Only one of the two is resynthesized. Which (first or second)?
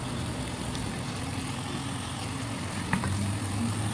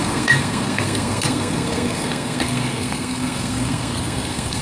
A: second